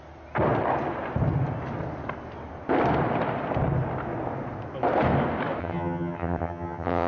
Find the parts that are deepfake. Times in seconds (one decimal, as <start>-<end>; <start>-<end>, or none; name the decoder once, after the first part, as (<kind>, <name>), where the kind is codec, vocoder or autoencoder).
5.6-7.1 (vocoder, HiFi-GAN)